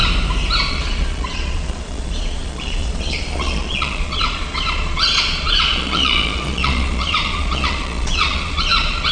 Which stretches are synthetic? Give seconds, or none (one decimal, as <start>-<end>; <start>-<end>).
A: 0.7-9.1

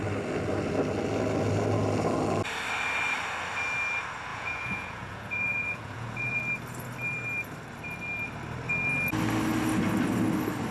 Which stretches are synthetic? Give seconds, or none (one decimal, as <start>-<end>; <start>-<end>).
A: 4.3-6.4

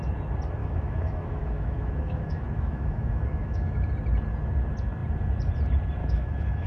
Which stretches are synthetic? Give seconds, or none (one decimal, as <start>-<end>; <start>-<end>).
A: 0.6-3.9; 6.0-6.7